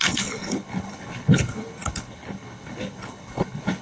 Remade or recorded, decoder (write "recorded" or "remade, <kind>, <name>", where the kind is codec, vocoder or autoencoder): remade, codec, HILCodec